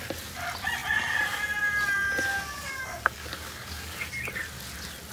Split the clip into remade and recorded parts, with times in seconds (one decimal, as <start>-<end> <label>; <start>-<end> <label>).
0.0-2.3 recorded; 2.3-4.1 remade; 4.1-5.1 recorded